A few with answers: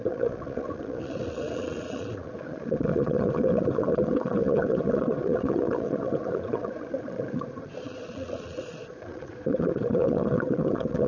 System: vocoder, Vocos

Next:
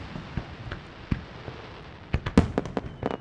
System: none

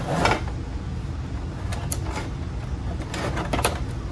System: none